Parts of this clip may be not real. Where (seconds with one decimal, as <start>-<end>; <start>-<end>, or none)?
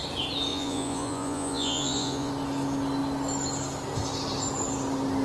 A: 0.5-2.3